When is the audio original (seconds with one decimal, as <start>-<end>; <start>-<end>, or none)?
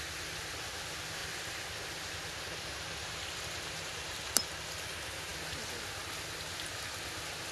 0.0-7.5